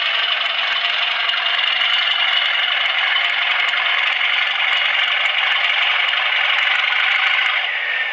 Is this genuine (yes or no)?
yes